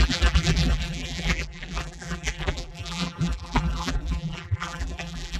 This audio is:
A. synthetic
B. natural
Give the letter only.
A